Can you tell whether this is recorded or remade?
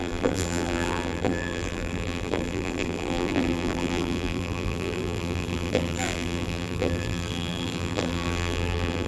remade